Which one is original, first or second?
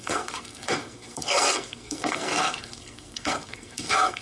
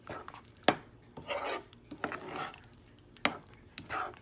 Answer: second